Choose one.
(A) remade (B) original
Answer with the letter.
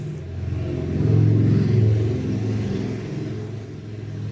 B